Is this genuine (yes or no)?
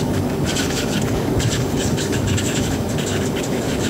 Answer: no